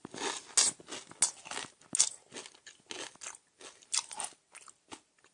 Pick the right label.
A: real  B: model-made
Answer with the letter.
A